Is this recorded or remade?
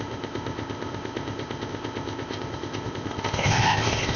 remade